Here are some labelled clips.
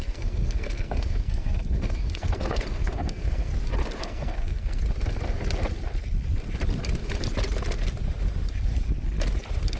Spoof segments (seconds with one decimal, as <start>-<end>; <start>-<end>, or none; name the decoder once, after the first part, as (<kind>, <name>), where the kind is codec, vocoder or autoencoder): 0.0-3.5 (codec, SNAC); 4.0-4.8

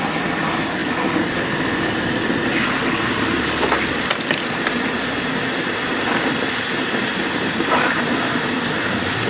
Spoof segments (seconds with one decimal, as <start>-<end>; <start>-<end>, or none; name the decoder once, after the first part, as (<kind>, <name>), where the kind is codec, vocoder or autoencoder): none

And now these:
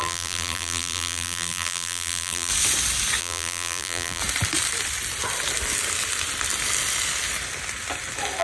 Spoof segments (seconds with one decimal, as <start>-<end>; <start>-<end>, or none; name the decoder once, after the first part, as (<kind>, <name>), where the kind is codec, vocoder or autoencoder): 0.0-2.5 (vocoder, BigVGAN v2); 3.2-4.2

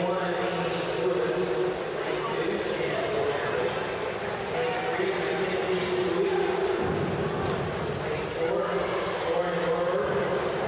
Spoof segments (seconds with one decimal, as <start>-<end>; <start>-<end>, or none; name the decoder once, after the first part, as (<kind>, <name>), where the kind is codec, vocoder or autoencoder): none

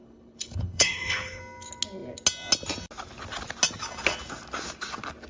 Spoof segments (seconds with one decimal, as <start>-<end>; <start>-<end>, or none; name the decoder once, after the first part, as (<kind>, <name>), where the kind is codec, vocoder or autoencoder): 0.0-1.4 (codec, HILCodec)

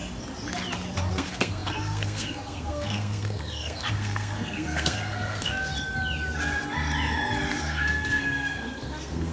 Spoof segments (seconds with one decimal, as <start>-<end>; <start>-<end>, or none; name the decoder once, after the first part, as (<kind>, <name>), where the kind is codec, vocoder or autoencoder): 1.1-5.7 (codec, SNAC); 7.6-9.3